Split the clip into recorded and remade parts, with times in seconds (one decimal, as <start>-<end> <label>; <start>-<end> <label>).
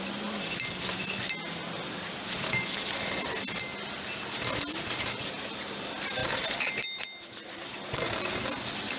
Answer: 0.0-9.0 recorded